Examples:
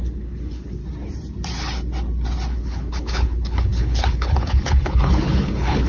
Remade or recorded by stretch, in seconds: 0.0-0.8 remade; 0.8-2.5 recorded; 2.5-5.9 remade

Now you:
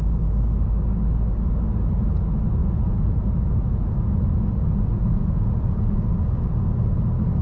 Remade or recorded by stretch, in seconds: 0.0-2.6 recorded; 2.6-6.1 remade; 6.1-7.4 recorded

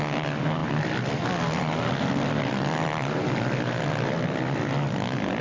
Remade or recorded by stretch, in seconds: 0.0-5.4 recorded

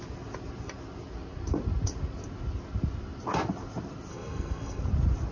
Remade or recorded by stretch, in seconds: 0.0-4.1 recorded; 4.1-4.8 remade; 4.8-5.3 recorded

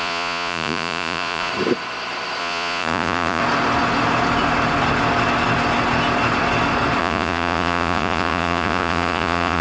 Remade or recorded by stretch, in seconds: 0.0-1.5 remade; 1.5-2.4 recorded; 2.4-3.4 remade; 3.4-7.0 recorded; 7.0-9.6 remade

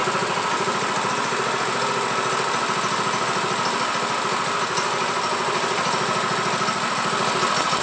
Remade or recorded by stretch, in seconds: 0.0-7.8 recorded

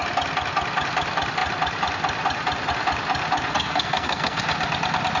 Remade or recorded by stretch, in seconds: 0.0-3.5 recorded; 3.5-4.4 remade; 4.4-5.2 recorded

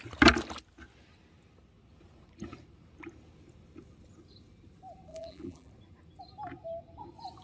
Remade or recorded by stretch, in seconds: 0.0-5.1 recorded; 5.1-5.7 remade; 5.7-7.4 recorded